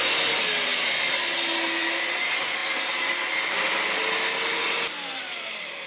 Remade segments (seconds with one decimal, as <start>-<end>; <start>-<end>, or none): none